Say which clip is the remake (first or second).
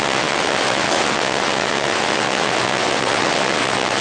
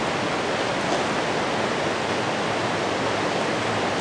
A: first